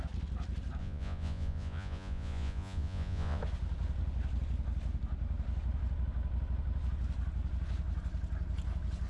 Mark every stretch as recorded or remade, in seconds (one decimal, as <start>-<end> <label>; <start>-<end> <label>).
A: 0.0-0.8 recorded; 0.8-3.4 remade; 3.4-9.1 recorded